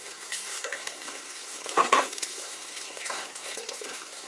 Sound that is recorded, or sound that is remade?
remade